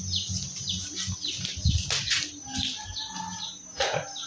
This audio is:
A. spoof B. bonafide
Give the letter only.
B